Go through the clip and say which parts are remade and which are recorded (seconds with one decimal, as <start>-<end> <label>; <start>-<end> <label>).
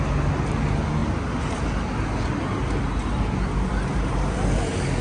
0.0-5.0 recorded